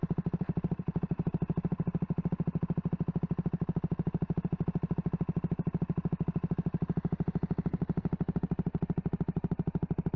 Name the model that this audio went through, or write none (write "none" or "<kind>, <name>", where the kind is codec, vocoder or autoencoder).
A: vocoder, BigVGAN v2